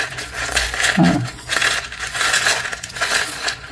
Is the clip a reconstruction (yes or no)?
yes